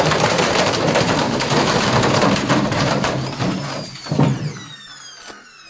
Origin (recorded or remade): remade